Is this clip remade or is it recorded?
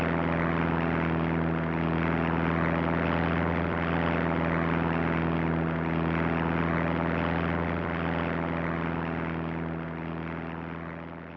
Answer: recorded